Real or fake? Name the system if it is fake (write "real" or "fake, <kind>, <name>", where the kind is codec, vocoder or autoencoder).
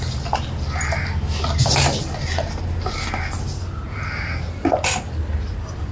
real